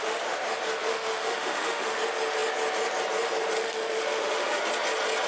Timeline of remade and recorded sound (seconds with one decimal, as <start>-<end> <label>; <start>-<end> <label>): 0.0-0.9 recorded; 0.9-2.0 remade; 2.0-3.6 recorded; 3.6-4.6 remade; 4.6-5.3 recorded